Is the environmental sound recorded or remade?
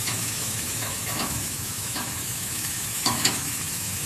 remade